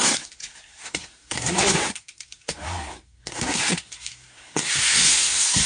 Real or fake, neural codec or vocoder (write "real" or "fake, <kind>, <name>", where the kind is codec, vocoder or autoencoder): fake, codec, SNAC